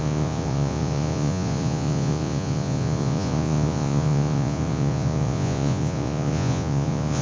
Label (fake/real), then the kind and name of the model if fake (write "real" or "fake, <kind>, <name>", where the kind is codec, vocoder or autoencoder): fake, vocoder, Vocos